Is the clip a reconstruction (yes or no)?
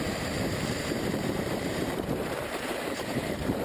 yes